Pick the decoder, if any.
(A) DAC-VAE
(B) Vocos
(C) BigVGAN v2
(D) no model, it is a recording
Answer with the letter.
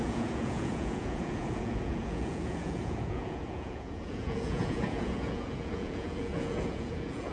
B